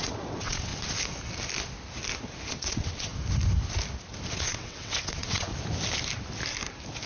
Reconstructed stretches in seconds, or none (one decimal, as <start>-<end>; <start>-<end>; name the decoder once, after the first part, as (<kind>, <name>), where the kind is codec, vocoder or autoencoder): 0.0-0.7 (vocoder, WaveNeXt); 2.5-3.1; 4.3-5.5